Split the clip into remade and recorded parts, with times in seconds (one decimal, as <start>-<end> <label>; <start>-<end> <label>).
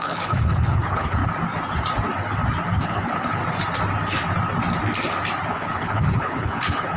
0.0-1.2 remade; 1.2-2.8 recorded; 2.8-3.4 remade; 3.4-5.5 recorded; 5.5-7.0 remade